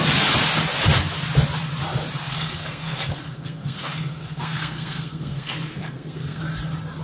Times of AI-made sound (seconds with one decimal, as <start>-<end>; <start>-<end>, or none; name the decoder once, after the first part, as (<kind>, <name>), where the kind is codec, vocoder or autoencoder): 2.2-6.4 (codec, SNAC)